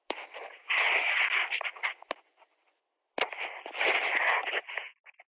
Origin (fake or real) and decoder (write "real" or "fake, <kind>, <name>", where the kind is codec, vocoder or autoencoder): real